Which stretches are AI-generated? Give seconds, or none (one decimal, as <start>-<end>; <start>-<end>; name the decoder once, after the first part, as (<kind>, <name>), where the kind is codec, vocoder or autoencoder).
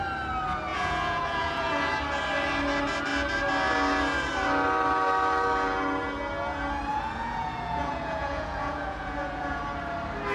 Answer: 0.7-1.9 (vocoder, Vocos); 6.9-9.6